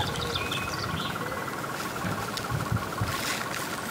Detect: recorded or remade recorded